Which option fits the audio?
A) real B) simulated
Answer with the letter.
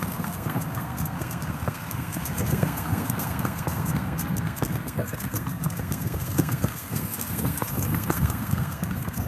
B